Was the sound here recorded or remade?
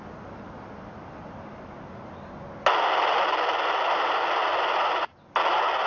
recorded